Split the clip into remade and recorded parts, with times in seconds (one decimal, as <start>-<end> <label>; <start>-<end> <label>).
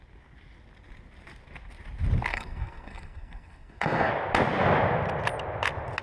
0.0-2.3 recorded; 2.3-4.1 remade; 4.1-6.0 recorded